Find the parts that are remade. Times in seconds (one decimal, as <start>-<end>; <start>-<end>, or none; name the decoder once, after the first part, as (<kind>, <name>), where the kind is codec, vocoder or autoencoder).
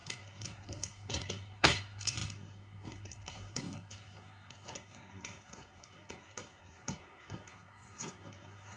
0.0-8.8 (codec, SNAC)